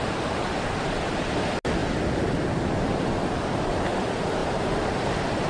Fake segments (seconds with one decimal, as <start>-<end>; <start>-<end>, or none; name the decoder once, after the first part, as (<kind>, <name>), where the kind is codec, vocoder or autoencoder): none